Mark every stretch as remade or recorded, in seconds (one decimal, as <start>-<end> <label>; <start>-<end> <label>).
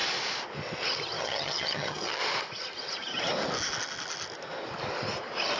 0.0-1.2 recorded; 1.2-2.2 remade; 2.2-5.6 recorded